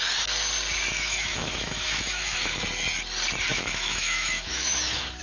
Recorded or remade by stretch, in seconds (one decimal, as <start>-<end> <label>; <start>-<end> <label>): 0.0-0.9 recorded; 0.9-2.6 remade; 2.6-3.5 recorded; 3.5-5.2 remade